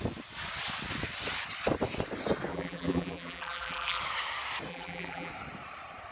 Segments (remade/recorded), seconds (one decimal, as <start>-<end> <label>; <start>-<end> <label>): 0.0-2.5 recorded; 2.5-4.0 remade; 4.0-4.7 recorded; 4.7-5.3 remade; 5.3-6.1 recorded